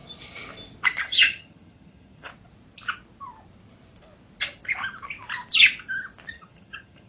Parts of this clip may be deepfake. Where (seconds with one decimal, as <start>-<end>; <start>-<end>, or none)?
1.0-2.3; 6.3-7.1